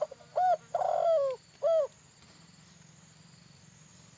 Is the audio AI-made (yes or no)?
no